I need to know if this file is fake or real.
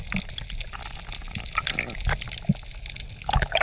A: real